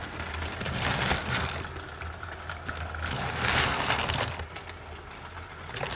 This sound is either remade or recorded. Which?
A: recorded